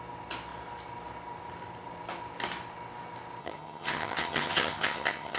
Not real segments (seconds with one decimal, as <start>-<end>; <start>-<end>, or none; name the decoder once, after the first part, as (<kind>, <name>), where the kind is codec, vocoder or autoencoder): 3.4-5.4 (vocoder, HiFi-GAN)